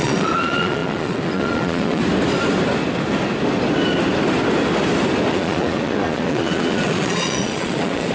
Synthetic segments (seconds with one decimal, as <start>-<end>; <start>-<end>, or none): 0.0-2.0; 5.3-8.1